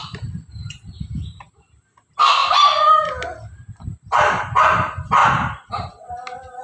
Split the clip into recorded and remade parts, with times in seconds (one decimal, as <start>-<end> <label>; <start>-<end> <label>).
0.0-0.8 remade; 0.8-5.2 recorded; 5.2-5.9 remade; 5.9-6.6 recorded